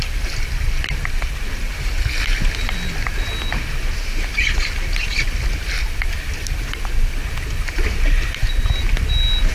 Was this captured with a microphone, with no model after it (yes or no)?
yes